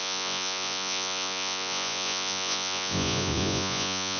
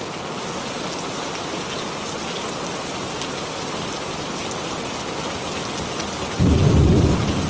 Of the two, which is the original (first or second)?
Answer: second